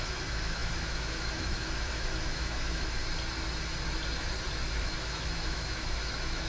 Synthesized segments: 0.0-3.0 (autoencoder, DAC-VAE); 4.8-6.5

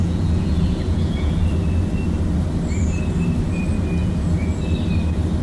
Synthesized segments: 0.0-1.3 (vocoder, Vocos); 4.0-4.6

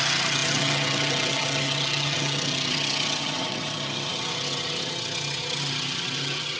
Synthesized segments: 0.0-6.6 (vocoder, HiFi-GAN)